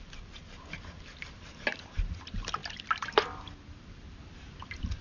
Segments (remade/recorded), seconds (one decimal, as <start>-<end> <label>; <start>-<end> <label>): 0.0-5.0 recorded